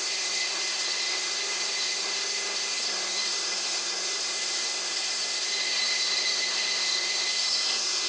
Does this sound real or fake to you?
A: fake